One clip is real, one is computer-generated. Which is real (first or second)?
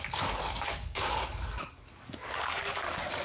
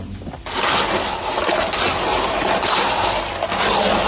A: second